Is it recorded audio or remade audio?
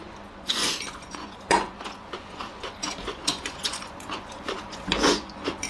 remade